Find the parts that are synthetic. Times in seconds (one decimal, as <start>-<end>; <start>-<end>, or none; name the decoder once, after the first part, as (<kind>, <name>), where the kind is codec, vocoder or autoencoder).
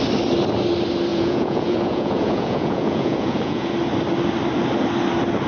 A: 1.1-3.7 (vocoder, Vocos)